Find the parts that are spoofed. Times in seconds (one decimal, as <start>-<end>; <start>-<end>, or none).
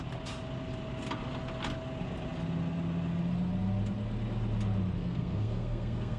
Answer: 5.0-6.2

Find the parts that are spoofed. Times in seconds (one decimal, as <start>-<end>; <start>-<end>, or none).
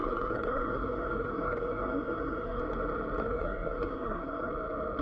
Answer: 0.0-2.6; 3.2-4.5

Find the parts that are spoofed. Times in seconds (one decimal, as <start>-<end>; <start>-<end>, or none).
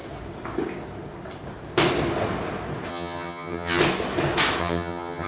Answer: 2.9-3.8; 4.6-5.3